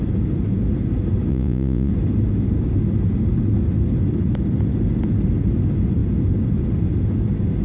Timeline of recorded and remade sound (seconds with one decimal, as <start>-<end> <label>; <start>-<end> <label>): 0.0-1.3 recorded; 1.3-1.9 remade; 1.9-7.6 recorded

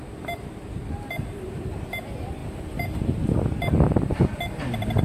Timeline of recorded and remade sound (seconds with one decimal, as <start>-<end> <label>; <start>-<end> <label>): 0.0-5.0 recorded